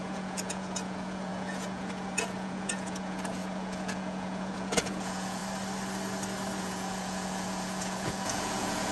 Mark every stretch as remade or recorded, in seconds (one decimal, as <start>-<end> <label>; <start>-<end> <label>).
0.0-5.4 remade; 5.4-6.6 recorded; 6.6-8.9 remade